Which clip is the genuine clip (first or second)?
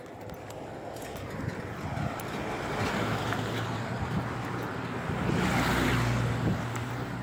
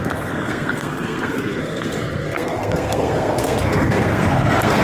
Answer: first